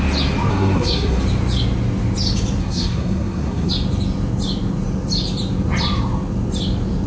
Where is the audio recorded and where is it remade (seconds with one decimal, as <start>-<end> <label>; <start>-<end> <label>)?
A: 0.0-0.5 recorded; 0.5-1.2 remade; 1.2-2.6 recorded; 2.6-3.7 remade; 3.7-7.1 recorded